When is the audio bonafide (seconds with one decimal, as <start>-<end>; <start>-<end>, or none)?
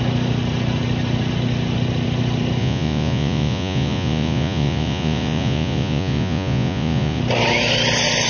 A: 0.0-2.6; 7.2-8.3